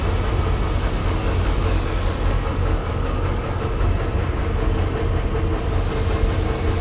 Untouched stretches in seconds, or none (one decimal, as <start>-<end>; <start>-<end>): 0.0-1.0; 3.6-4.4; 4.9-6.8